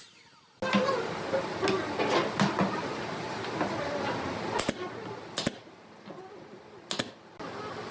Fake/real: real